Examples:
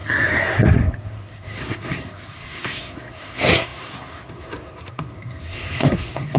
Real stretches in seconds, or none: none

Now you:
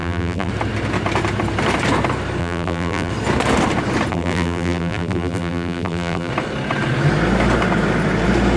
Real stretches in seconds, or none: 0.5-2.4; 3.1-4.1; 6.3-8.6

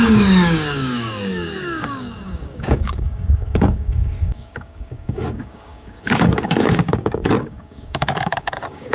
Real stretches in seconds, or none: none

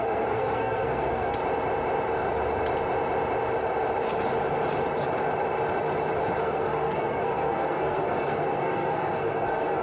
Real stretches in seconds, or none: 1.4-6.4

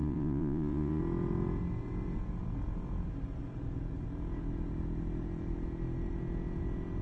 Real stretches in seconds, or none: 1.0-7.0